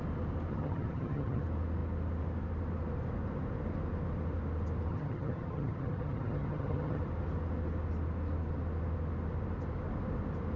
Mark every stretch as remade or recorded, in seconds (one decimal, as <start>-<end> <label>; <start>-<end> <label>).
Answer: 0.0-0.5 recorded; 0.5-1.4 remade; 1.4-4.9 recorded; 4.9-7.0 remade; 7.0-10.6 recorded